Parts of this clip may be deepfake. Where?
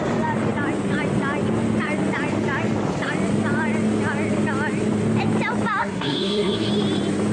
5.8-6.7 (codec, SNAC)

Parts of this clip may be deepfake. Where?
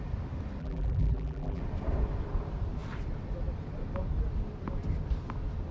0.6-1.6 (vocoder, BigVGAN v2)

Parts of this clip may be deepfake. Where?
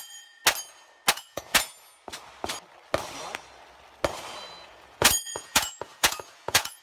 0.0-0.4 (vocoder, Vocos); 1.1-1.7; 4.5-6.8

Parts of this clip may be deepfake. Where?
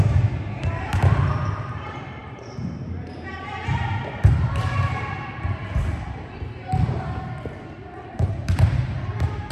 0.0-5.0 (vocoder, BigVGAN v2); 8.1-9.5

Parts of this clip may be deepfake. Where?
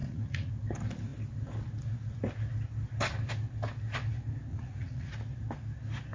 0.0-0.5 (vocoder, Vocos); 4.5-5.1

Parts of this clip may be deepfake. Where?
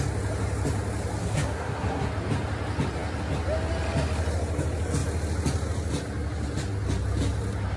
1.2-2.1 (codec, SNAC)